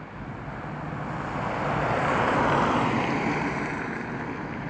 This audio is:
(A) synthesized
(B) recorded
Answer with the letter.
B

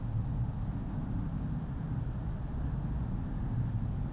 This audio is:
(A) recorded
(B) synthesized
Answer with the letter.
A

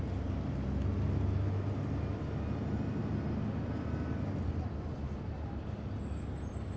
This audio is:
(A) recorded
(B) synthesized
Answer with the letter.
A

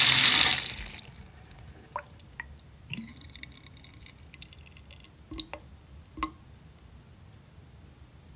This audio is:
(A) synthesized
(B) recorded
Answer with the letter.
B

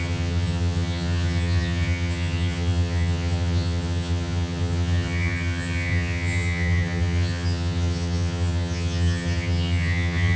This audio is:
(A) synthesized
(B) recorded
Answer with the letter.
A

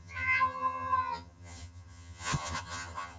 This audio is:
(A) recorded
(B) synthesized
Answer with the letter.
B